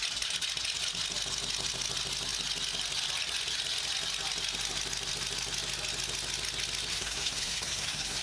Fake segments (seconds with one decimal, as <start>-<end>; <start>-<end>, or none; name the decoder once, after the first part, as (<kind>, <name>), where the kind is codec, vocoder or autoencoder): 6.9-8.2 (codec, SNAC)